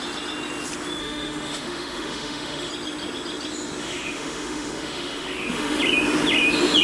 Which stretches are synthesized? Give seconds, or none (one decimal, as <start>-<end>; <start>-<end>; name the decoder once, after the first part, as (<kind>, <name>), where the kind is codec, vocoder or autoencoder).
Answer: 1.0-2.7 (autoencoder, DAC-VAE); 3.8-5.8